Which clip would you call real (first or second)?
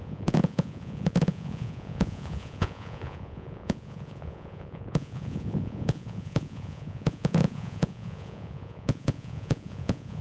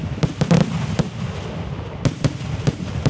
second